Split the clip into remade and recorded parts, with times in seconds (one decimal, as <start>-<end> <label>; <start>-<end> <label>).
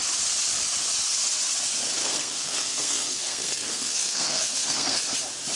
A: 0.0-2.0 recorded; 2.0-5.0 remade; 5.0-5.6 recorded